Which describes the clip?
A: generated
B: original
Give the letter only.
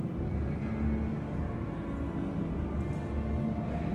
B